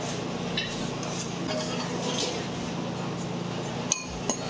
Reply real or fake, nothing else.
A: real